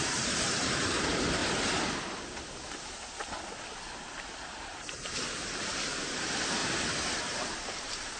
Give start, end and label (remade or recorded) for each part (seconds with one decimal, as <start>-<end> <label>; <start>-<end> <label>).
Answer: 0.0-1.4 remade; 1.4-4.6 recorded; 4.6-6.6 remade; 6.6-7.5 recorded; 7.5-8.2 remade